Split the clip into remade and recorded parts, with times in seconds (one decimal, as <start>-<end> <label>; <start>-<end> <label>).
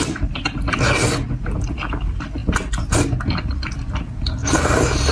0.0-4.4 recorded; 4.4-5.1 remade